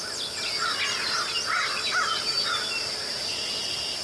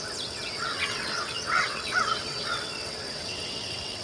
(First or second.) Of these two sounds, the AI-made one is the second